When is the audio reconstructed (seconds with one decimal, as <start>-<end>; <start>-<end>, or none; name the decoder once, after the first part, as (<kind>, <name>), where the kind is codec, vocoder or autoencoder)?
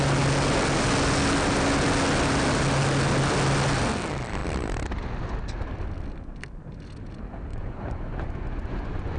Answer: 7.5-9.2 (vocoder, Vocos)